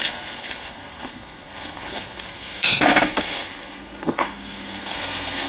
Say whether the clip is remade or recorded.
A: remade